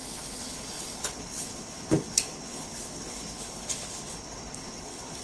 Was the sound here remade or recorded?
remade